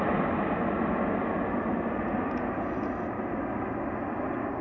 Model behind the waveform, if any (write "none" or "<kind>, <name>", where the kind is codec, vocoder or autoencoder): none